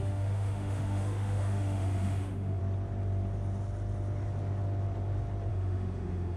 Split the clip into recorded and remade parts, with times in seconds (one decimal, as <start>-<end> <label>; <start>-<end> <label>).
0.0-2.6 remade; 2.6-5.5 recorded; 5.5-6.4 remade